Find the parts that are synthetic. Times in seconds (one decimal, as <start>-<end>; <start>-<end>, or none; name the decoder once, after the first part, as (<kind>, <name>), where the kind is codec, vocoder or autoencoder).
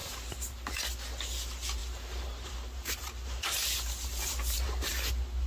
0.0-0.7 (vocoder, BigVGAN v2); 1.8-5.1